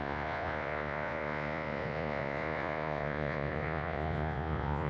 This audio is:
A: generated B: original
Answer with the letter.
A